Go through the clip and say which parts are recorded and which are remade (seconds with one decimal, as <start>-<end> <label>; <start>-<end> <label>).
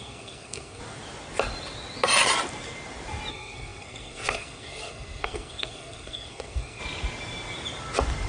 0.0-0.8 remade; 0.8-3.3 recorded; 3.3-6.8 remade; 6.8-8.3 recorded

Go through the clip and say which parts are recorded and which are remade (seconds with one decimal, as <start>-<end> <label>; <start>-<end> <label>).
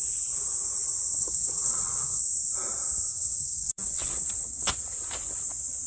0.0-1.2 recorded; 1.2-2.2 remade; 2.2-3.1 recorded; 3.1-4.7 remade; 4.7-5.9 recorded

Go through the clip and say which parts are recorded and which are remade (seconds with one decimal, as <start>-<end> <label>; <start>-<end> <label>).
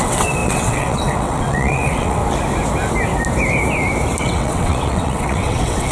0.0-2.2 remade; 2.2-4.2 recorded; 4.2-5.9 remade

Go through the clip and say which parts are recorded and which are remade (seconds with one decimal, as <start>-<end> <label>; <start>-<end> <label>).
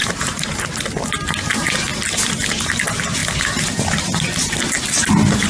0.0-0.6 remade; 0.6-5.5 recorded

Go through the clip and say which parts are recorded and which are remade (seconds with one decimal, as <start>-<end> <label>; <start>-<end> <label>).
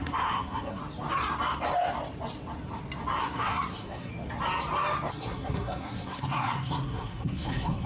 0.0-0.8 remade; 0.8-3.2 recorded; 3.2-4.1 remade; 4.1-5.1 recorded; 5.1-7.9 remade